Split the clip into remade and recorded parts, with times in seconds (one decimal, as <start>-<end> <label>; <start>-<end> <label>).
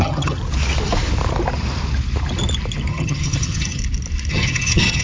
0.0-0.4 remade; 0.4-2.9 recorded; 2.9-3.8 remade; 3.8-4.3 recorded; 4.3-5.0 remade